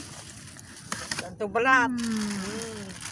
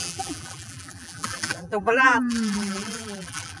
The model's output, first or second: second